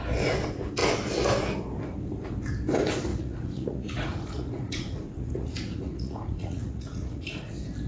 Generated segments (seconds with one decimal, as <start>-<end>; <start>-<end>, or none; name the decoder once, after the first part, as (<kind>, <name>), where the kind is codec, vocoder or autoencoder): 3.1-7.5 (vocoder, Vocos)